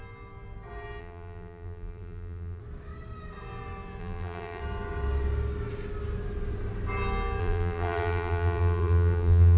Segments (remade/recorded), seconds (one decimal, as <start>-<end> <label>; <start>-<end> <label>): 0.0-1.0 recorded; 1.0-2.6 remade; 2.6-4.0 recorded; 4.0-4.6 remade; 4.6-7.4 recorded; 7.4-9.6 remade